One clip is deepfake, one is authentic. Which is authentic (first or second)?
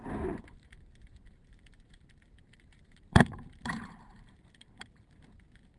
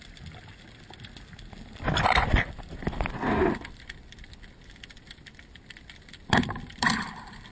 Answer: second